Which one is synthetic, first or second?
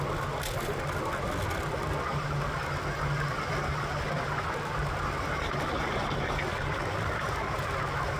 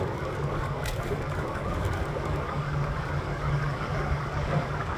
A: second